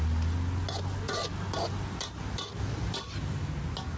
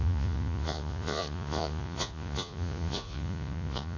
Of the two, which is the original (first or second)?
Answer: first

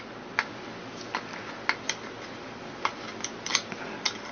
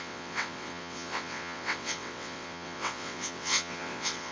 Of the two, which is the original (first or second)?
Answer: first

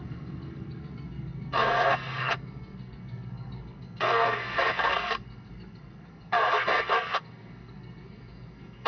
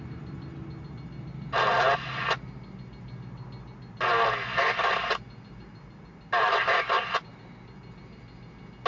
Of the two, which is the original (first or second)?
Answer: second